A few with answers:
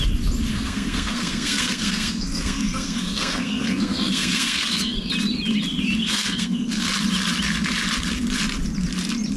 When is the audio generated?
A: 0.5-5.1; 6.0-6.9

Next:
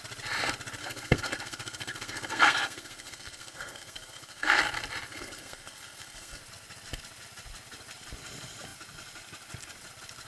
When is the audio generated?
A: 0.8-4.6; 5.1-6.4

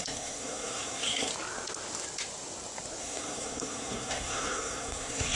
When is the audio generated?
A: 0.0-1.3; 3.0-5.3

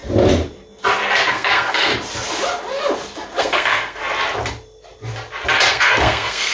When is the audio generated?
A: 1.3-1.9; 3.4-4.0; 5.7-6.5

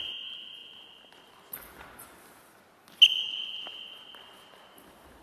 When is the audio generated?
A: none